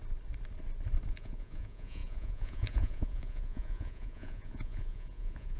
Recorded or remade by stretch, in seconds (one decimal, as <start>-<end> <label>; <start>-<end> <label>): 0.0-1.1 recorded; 1.1-5.6 remade